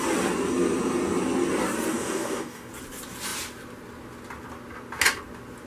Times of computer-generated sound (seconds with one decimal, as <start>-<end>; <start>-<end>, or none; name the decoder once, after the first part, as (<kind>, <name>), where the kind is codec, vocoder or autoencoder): 1.9-2.7 (codec, DAC)